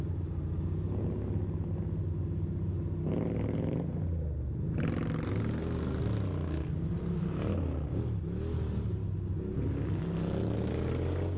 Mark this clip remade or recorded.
recorded